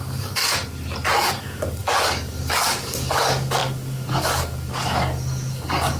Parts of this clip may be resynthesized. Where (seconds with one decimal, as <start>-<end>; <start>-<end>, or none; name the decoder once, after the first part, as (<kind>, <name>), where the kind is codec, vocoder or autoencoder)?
0.0-0.4 (codec, DAC); 1.3-6.0

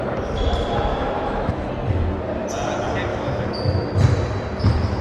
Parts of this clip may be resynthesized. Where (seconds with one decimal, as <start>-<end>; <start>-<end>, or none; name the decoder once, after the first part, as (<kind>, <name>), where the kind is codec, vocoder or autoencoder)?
0.9-1.7 (autoencoder, DAC-VAE); 3.1-3.9

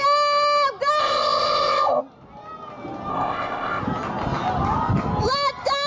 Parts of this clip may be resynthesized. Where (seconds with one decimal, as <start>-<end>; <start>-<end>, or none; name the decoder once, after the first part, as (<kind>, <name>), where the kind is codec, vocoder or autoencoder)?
1.0-2.0 (codec, ZipCodec); 3.1-3.8

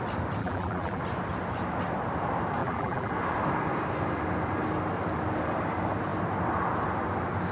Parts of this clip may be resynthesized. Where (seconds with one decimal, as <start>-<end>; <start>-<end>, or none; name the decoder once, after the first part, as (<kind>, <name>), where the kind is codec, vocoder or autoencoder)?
0.4-1.0 (vocoder, BigVGAN v2); 2.6-3.1